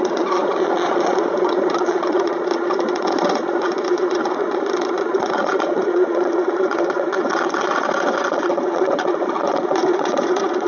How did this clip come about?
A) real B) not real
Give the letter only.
B